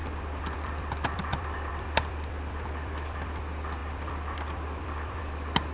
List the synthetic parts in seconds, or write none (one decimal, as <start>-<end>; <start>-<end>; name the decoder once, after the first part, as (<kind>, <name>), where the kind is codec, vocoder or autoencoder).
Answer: 0.0-3.4 (vocoder, BigVGAN v2); 3.8-5.2